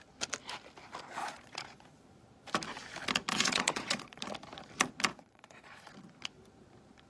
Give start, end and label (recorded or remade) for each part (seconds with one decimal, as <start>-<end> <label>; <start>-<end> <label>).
0.0-1.2 recorded; 1.2-2.0 remade; 2.0-3.3 recorded; 3.3-4.2 remade; 4.2-5.1 recorded; 5.1-5.9 remade; 5.9-7.1 recorded